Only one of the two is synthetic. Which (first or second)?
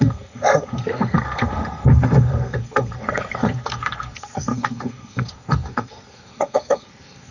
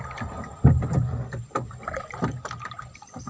first